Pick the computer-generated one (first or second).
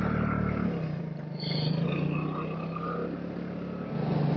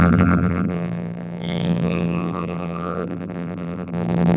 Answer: second